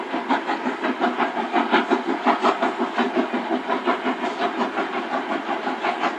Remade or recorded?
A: recorded